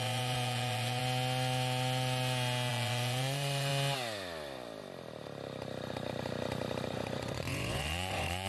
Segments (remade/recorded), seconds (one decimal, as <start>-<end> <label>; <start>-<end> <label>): 0.0-1.0 remade; 1.0-2.7 recorded; 2.7-3.7 remade; 3.7-6.9 recorded; 6.9-8.5 remade